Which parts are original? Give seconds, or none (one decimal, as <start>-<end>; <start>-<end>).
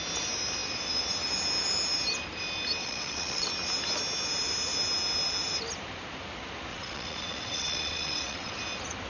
0.0-2.8; 3.5-6.7; 8.5-9.1